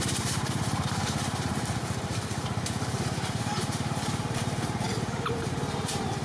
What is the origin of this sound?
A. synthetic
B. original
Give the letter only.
A